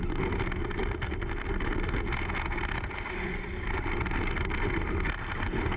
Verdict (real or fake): real